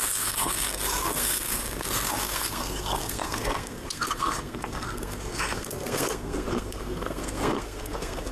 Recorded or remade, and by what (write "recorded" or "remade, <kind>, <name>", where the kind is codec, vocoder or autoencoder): remade, codec, SNAC